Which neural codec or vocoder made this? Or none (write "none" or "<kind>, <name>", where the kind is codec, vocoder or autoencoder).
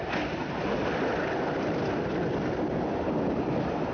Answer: none